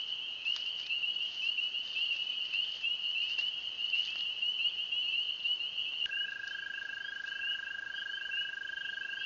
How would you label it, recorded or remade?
recorded